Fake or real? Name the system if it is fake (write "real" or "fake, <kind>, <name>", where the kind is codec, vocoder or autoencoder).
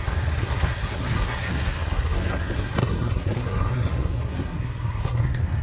fake, codec, SNAC